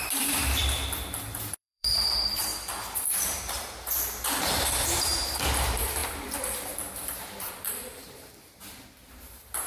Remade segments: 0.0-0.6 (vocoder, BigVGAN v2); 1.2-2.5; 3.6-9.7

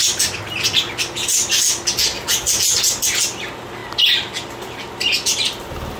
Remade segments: none